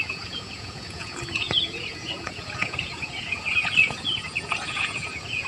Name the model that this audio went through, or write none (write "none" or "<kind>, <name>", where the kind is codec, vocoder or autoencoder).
vocoder, Vocos